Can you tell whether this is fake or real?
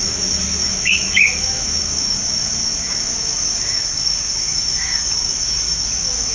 fake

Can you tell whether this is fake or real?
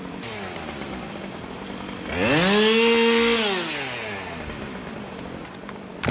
real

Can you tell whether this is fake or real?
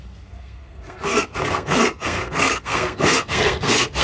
fake